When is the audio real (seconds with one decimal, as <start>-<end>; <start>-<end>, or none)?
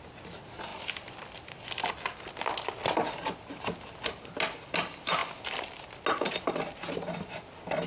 0.0-7.9